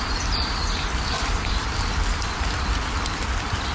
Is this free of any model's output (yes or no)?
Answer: no